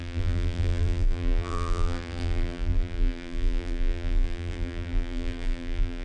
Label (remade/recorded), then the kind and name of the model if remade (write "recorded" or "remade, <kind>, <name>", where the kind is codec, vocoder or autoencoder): remade, vocoder, BigVGAN v2